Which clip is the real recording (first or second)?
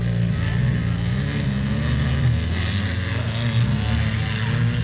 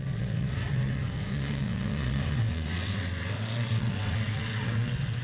first